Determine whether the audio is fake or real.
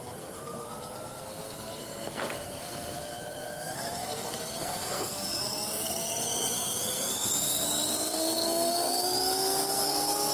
fake